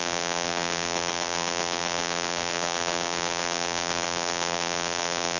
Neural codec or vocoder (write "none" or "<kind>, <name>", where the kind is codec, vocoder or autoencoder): vocoder, BigVGAN v2